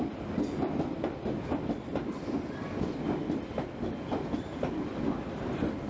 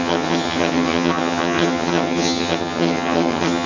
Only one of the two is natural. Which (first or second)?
first